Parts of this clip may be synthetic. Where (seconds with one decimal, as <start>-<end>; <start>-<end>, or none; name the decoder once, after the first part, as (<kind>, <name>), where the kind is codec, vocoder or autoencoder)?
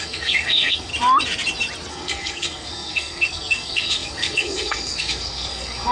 0.0-0.9 (codec, SNAC); 1.9-5.9